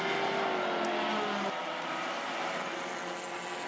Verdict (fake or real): real